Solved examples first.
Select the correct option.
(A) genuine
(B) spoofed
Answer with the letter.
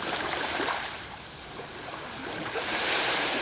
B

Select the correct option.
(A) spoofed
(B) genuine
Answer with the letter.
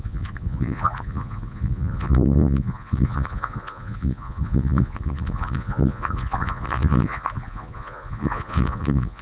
A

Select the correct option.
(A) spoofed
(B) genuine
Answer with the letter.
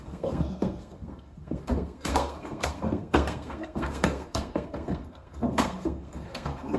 A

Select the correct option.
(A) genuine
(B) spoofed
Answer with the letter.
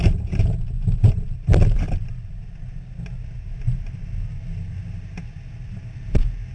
A